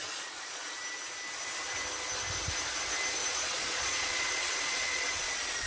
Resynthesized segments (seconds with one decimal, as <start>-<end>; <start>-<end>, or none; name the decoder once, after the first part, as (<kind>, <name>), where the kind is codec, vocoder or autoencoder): 0.0-0.7 (vocoder, Vocos); 3.2-5.7